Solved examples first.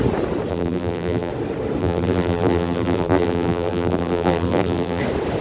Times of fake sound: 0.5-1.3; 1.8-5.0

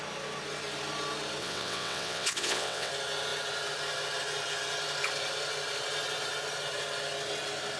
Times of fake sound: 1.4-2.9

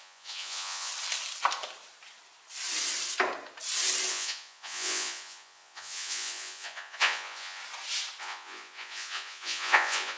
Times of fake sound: 0.0-0.9; 4.1-7.6; 8.2-10.2